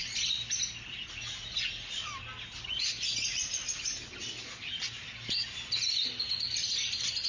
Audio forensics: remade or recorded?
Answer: recorded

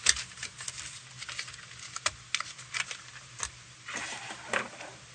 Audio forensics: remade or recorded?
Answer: recorded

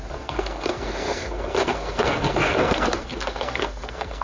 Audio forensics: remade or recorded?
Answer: remade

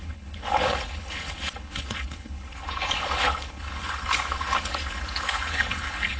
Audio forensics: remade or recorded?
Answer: remade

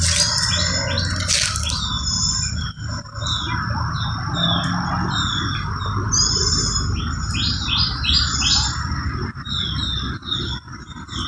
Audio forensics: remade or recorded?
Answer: recorded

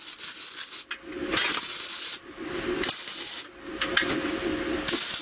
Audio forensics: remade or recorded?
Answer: recorded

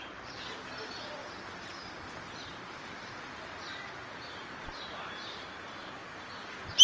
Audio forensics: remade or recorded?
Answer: recorded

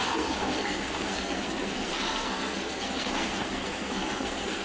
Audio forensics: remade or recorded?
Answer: remade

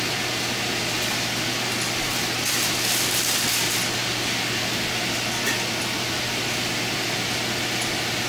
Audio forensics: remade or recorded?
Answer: recorded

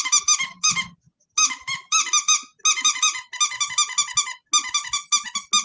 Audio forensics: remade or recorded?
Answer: recorded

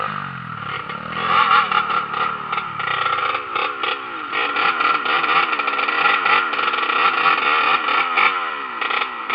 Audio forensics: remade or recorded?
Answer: recorded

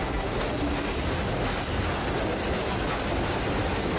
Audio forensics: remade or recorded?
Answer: recorded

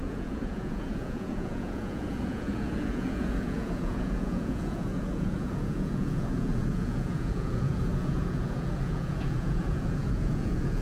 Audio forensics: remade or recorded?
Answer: remade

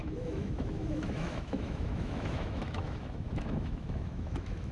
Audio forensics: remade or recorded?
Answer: remade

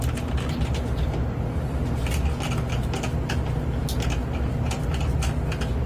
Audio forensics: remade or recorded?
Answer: recorded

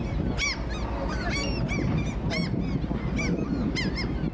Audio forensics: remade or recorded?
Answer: recorded